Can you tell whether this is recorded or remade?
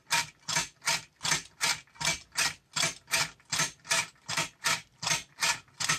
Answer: recorded